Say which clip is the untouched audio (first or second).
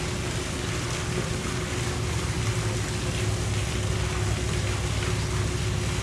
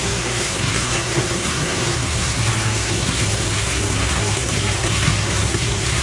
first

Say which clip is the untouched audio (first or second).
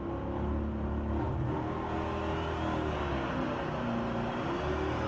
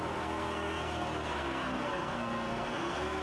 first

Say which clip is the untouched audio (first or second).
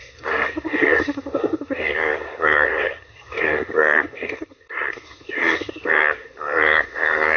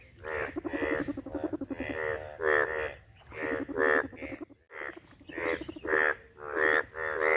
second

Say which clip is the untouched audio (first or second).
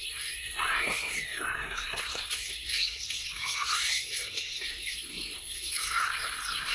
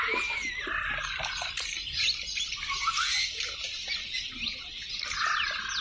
second